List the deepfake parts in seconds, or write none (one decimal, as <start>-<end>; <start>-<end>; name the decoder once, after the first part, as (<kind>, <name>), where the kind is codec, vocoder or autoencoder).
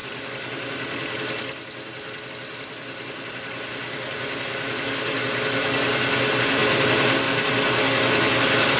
none